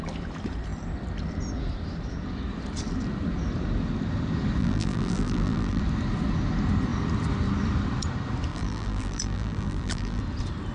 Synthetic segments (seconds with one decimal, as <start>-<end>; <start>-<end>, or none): 4.6-5.8; 8.5-10.2